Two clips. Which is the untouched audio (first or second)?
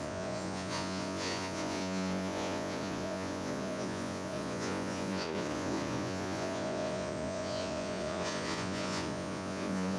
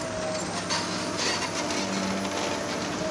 second